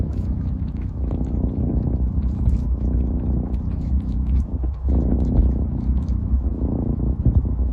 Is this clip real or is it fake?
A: fake